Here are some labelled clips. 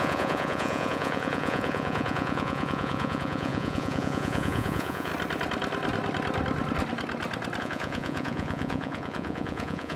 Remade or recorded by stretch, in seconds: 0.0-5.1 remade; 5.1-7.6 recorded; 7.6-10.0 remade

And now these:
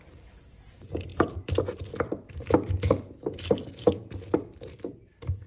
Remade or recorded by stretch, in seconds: 0.0-5.5 recorded

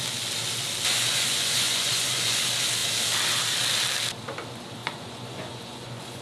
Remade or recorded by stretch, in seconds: 0.0-0.9 recorded; 0.9-2.4 remade; 2.4-4.8 recorded; 4.8-6.2 remade

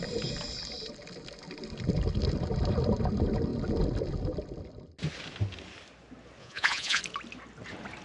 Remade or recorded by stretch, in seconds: 0.0-6.4 recorded; 6.4-7.0 remade; 7.0-8.0 recorded

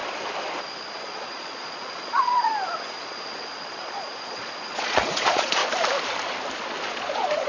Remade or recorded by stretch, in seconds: 0.0-1.0 recorded; 1.0-2.5 remade; 2.5-3.0 recorded; 3.0-5.6 remade; 5.6-6.8 recorded; 6.8-7.5 remade

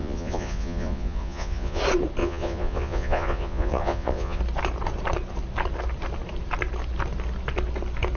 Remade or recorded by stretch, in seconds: 0.0-1.8 remade; 1.8-2.2 recorded; 2.2-4.4 remade; 4.4-8.2 recorded